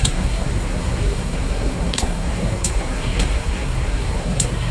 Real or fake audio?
fake